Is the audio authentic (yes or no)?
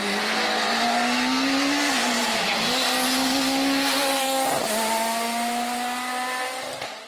yes